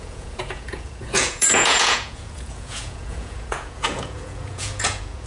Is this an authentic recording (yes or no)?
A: no